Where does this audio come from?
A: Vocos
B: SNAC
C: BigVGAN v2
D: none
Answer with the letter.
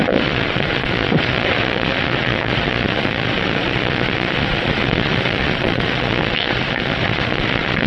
A